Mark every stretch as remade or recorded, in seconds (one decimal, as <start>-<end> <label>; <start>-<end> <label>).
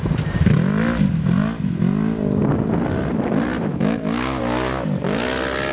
0.0-3.7 recorded; 3.7-4.4 remade; 4.4-5.7 recorded